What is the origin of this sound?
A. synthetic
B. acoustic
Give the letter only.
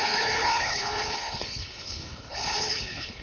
A